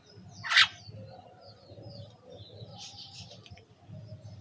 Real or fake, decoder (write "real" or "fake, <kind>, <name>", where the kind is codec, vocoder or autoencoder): real